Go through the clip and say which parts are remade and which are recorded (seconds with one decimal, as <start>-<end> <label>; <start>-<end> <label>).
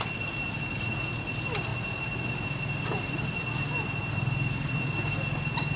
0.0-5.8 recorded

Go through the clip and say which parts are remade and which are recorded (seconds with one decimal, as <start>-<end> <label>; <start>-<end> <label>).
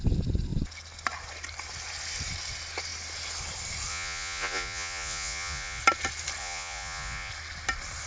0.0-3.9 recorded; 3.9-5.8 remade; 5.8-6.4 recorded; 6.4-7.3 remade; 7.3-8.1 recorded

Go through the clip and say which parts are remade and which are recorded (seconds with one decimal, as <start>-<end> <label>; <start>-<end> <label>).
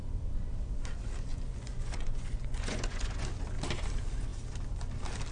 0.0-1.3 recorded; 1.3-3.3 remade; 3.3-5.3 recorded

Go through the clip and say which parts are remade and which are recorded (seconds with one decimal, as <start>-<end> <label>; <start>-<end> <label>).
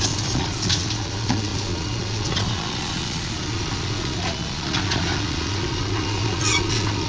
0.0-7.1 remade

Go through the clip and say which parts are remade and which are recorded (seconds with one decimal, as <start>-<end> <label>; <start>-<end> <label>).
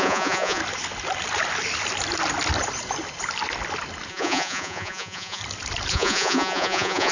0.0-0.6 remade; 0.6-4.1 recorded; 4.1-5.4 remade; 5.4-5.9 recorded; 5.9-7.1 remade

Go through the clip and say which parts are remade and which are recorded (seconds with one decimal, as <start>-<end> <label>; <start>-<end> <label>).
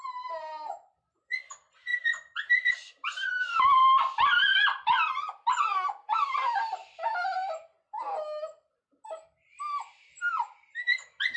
0.0-11.4 recorded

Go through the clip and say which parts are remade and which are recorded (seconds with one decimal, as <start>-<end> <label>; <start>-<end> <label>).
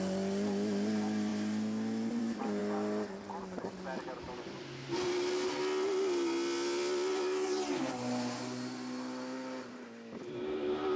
0.0-11.0 recorded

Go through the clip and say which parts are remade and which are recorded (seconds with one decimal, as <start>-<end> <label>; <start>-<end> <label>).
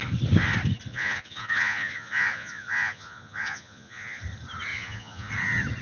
0.0-0.9 recorded; 0.9-4.2 remade; 4.2-4.7 recorded; 4.7-5.3 remade; 5.3-5.8 recorded